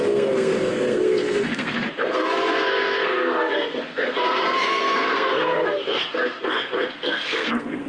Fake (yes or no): yes